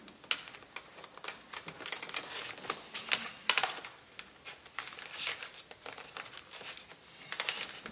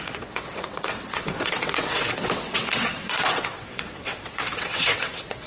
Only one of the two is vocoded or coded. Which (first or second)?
second